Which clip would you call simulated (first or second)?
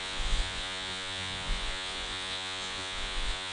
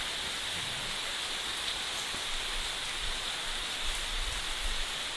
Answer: first